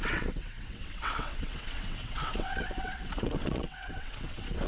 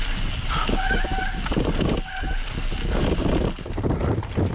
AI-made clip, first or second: first